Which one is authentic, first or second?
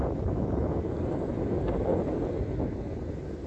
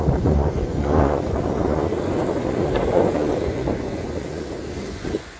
first